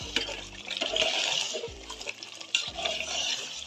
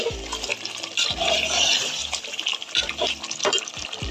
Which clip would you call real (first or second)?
second